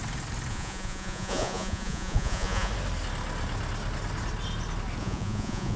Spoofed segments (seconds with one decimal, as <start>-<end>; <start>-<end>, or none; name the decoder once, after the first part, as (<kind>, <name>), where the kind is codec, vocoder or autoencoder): 0.5-2.7 (vocoder, Vocos); 5.0-5.8